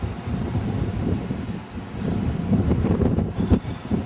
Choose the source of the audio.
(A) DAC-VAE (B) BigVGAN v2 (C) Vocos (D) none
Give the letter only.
D